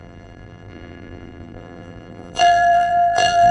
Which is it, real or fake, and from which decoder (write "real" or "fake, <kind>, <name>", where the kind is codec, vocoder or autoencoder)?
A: fake, vocoder, BigVGAN v2